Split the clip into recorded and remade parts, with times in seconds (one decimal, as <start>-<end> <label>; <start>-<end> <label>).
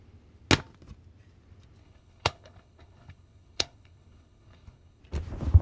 0.0-1.8 recorded; 1.8-5.0 remade; 5.0-5.6 recorded